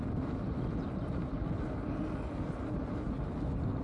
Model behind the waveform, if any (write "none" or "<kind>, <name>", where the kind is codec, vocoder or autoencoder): none